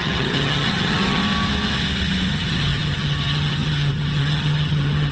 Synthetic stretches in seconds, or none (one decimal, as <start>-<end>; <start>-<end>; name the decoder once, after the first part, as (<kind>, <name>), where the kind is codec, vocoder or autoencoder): 0.0-1.2 (vocoder, HiFi-GAN); 2.3-5.1

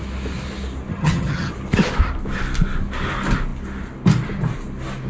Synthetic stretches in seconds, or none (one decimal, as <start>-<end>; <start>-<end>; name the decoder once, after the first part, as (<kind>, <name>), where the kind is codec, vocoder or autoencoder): 0.9-1.5 (vocoder, HiFi-GAN)

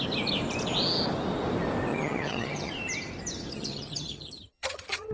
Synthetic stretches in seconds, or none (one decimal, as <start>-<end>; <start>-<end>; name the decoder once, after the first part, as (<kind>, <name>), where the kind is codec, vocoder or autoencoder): 1.9-2.7 (vocoder, HiFi-GAN); 3.5-5.1

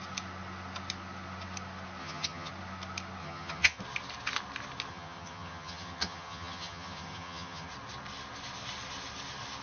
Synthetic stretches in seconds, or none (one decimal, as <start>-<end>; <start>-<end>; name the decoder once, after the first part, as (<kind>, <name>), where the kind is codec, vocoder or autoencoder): 2.0-2.5 (vocoder, HiFi-GAN); 3.2-3.8; 4.9-7.7

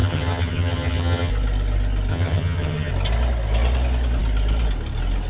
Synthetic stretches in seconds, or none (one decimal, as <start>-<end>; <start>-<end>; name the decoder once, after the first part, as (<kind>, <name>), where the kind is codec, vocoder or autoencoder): 0.0-1.3 (vocoder, HiFi-GAN); 2.1-2.9

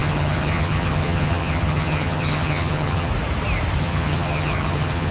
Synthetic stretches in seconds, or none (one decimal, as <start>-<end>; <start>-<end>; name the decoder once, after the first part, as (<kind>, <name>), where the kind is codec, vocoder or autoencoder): 0.0-3.1 (vocoder, HiFi-GAN); 3.8-5.1

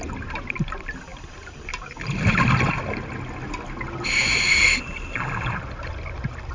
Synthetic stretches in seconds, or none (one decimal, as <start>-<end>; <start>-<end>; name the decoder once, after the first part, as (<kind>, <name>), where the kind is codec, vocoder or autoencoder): none